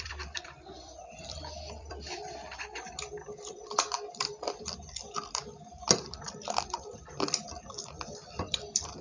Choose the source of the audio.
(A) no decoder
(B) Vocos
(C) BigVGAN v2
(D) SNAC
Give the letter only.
C